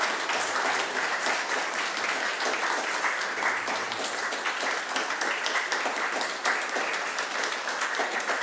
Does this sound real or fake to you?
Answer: real